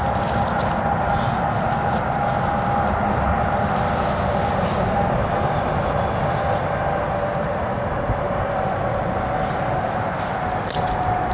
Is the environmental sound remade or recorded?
recorded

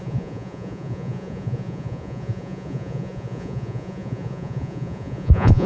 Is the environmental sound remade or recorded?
remade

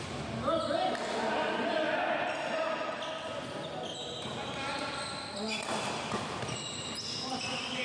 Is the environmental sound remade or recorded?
recorded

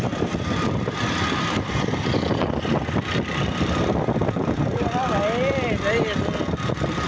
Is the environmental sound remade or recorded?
recorded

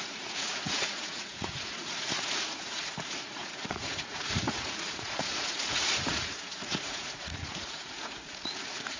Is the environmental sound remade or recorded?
remade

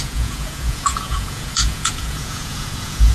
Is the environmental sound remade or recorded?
remade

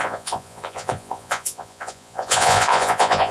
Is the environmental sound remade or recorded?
remade